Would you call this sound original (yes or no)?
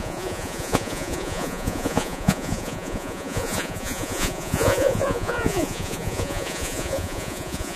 no